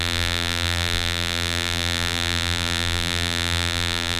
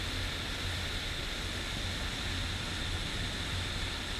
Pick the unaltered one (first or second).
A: second